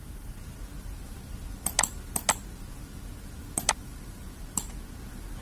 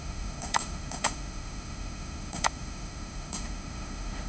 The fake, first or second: second